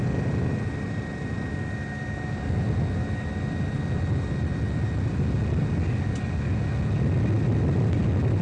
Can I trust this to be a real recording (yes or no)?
yes